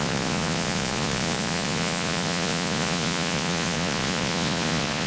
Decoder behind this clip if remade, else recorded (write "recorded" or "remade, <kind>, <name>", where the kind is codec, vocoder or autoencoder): remade, vocoder, Vocos